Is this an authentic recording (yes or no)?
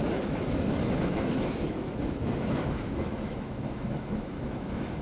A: no